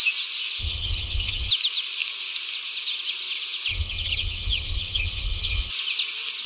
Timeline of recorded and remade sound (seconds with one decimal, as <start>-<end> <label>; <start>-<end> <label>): 0.0-0.6 recorded; 0.6-1.5 remade; 1.5-3.7 recorded; 3.7-5.7 remade; 5.7-6.5 recorded